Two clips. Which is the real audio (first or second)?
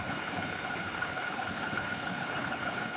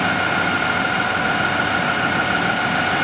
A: second